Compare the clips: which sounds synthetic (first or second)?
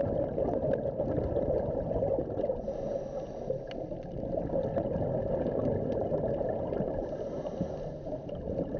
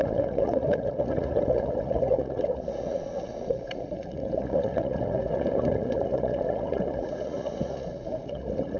second